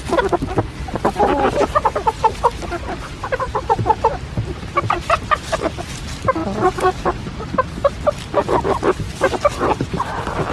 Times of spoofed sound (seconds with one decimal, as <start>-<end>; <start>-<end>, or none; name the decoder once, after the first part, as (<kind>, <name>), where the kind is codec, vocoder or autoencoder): none